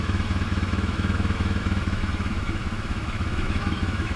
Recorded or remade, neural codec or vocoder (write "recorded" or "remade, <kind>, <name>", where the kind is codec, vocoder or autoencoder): remade, autoencoder, DAC-VAE